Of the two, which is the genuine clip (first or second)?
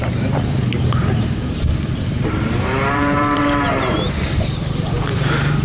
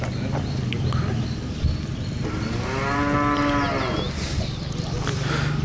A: second